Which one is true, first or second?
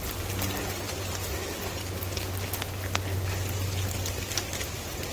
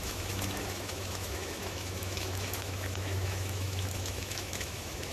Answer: first